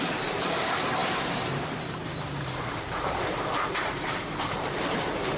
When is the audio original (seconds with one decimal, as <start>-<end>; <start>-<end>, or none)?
1.0-2.4